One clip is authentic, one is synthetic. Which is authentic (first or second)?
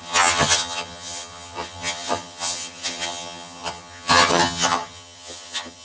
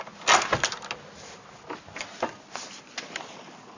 second